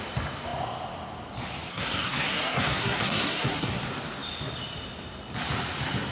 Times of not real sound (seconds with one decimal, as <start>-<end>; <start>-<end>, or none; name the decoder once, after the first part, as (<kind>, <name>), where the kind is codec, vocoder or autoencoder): 1.7-3.8 (codec, SNAC)